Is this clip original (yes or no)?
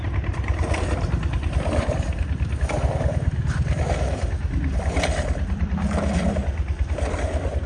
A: yes